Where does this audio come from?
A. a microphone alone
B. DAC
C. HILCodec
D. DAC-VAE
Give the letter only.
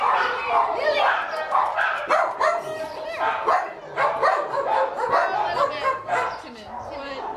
A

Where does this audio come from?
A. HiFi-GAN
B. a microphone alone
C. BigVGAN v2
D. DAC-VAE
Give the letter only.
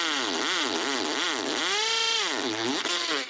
B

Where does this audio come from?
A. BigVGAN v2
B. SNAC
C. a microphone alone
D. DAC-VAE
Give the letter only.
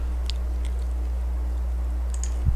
C